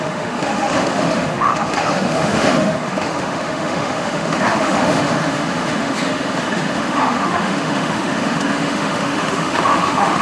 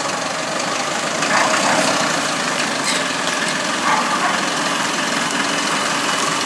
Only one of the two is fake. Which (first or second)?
first